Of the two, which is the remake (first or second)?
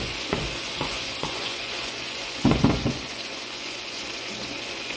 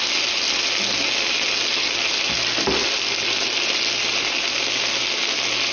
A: first